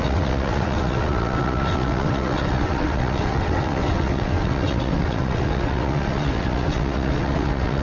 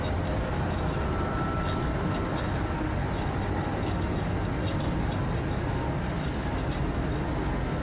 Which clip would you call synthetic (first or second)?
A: first